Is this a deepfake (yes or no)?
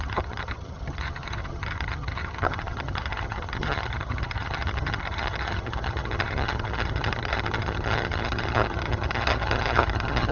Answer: yes